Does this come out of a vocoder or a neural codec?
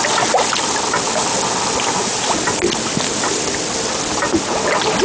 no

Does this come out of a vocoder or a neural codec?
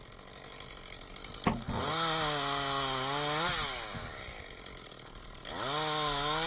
no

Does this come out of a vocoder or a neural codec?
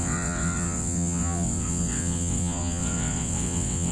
yes